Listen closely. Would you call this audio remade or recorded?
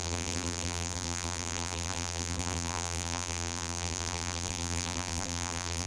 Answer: remade